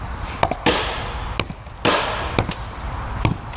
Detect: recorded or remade recorded